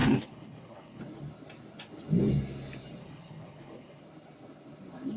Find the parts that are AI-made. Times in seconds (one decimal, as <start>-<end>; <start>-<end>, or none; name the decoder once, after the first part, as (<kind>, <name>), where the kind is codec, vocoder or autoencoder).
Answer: 0.0-1.0 (codec, HILCodec); 3.0-4.0